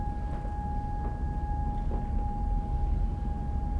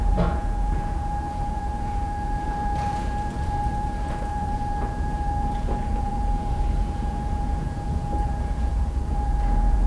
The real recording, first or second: first